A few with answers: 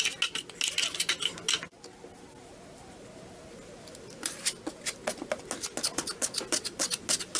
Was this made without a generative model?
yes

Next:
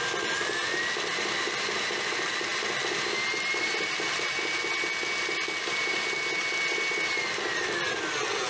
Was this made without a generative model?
yes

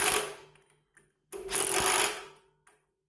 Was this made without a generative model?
yes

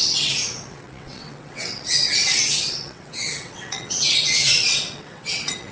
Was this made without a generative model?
no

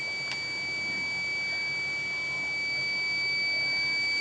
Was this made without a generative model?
yes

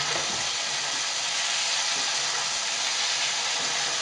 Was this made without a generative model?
yes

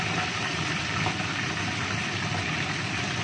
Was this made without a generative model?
yes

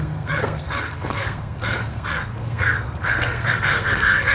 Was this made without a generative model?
no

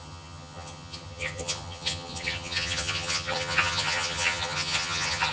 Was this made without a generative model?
no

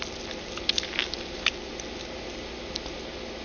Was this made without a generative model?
yes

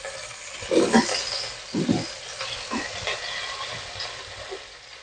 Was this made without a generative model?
yes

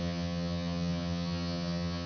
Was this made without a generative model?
no